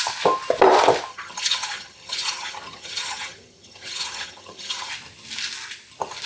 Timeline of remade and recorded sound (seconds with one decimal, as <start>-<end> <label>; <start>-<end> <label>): 0.0-1.1 recorded; 1.1-4.9 remade; 4.9-6.3 recorded